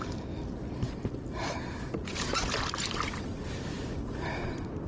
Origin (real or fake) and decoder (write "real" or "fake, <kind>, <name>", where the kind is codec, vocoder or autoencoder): real